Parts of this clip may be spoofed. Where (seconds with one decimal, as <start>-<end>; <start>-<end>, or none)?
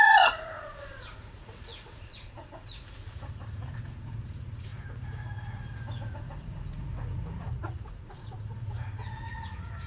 0.0-9.9